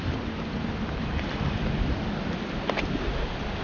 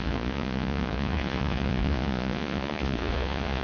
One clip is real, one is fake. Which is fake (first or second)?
second